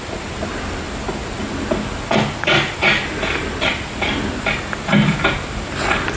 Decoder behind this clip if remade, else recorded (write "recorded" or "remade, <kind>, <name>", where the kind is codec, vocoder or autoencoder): recorded